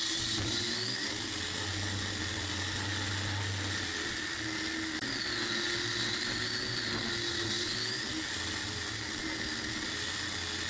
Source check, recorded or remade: recorded